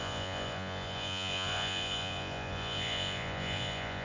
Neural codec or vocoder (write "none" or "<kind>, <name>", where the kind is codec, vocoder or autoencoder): vocoder, Vocos